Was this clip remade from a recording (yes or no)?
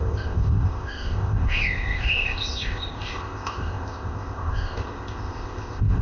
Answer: yes